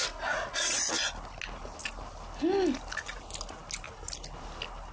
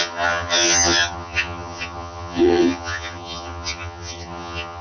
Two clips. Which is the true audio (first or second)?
first